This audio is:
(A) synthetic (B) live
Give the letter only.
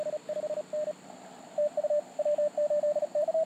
B